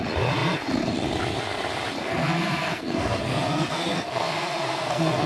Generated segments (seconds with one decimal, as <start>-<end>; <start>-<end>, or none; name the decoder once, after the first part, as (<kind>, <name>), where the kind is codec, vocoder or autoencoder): 2.0-5.3 (codec, SNAC)